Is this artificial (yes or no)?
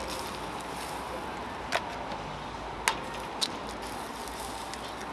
no